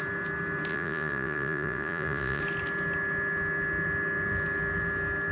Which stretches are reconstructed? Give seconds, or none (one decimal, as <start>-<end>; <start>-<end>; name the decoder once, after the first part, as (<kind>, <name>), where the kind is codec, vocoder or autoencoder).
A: 0.7-2.4 (vocoder, Vocos)